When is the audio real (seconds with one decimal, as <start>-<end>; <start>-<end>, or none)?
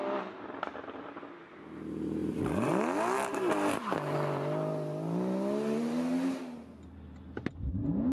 0.0-8.1